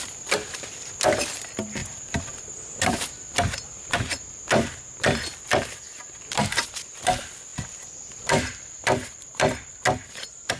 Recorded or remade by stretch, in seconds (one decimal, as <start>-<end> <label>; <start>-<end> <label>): 0.0-1.8 recorded; 1.8-3.0 remade; 3.0-7.5 recorded; 7.5-9.8 remade; 9.8-10.6 recorded